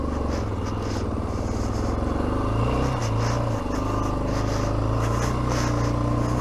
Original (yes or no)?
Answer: yes